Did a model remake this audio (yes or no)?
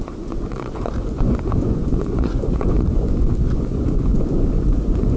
yes